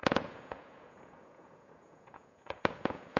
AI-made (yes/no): yes